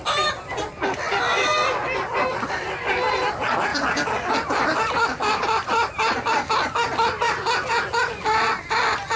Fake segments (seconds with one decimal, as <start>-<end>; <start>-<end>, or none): none